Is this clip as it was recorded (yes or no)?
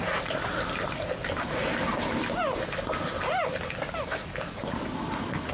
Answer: yes